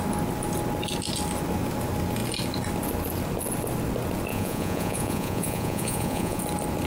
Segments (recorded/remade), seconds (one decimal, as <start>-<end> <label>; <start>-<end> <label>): 0.0-4.3 recorded; 4.3-6.4 remade; 6.4-6.9 recorded